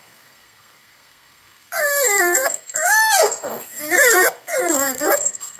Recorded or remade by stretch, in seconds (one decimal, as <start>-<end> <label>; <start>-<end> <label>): 0.0-5.6 remade